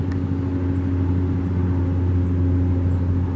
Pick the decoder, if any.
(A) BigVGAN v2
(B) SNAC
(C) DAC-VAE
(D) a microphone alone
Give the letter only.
D